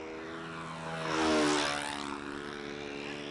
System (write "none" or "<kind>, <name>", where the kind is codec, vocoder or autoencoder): none